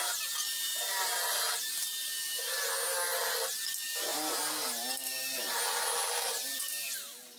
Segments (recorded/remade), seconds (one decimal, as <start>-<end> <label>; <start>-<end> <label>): 0.0-7.4 recorded